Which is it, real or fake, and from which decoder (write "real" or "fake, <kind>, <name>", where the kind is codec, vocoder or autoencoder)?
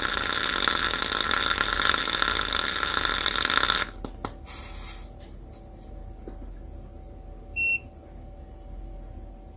real